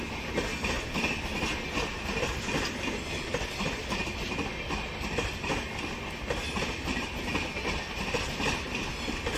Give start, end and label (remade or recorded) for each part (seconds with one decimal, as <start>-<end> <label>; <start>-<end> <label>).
0.0-9.4 recorded